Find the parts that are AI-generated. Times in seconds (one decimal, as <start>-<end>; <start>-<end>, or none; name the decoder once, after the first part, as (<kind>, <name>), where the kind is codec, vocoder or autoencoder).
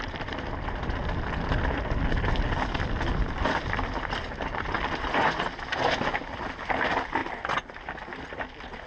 none